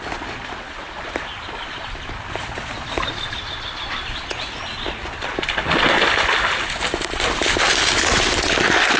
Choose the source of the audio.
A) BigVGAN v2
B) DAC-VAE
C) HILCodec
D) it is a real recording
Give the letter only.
D